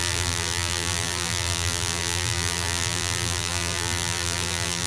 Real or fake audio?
fake